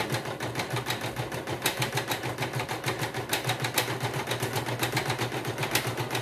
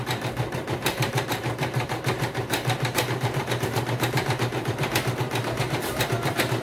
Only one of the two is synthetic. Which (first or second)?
second